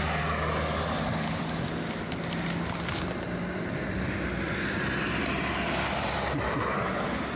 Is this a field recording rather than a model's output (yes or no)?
yes